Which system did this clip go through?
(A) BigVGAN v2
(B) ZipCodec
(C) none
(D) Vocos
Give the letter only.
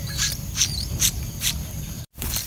A